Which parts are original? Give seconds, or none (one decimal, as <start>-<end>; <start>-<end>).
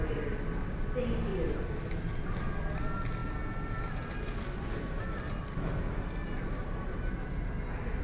0.0-8.0